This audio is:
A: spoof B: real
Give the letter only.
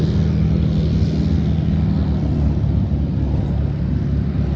B